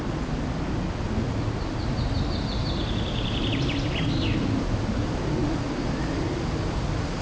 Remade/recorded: recorded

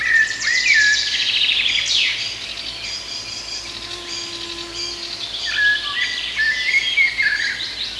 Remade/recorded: recorded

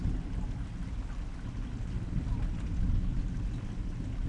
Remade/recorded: recorded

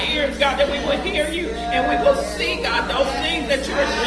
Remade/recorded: recorded